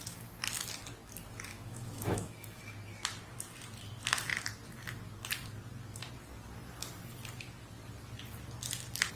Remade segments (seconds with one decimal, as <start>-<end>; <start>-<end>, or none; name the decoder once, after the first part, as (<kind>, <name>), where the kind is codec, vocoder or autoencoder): 1.5-2.6 (autoencoder, DAC-VAE)